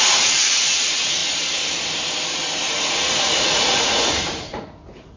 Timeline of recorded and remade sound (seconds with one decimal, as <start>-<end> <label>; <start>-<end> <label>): 0.0-1.2 remade; 1.2-2.7 recorded; 2.7-5.2 remade

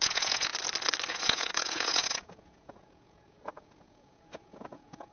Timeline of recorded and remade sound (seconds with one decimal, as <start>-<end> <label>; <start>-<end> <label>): 0.0-0.5 remade; 0.5-1.1 recorded; 1.1-5.1 remade